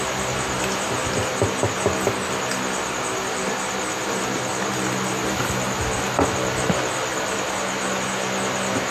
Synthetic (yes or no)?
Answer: no